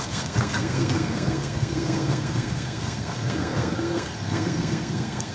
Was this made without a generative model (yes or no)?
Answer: no